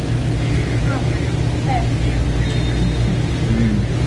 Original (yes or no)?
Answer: yes